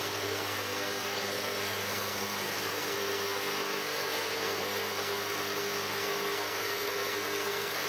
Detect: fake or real fake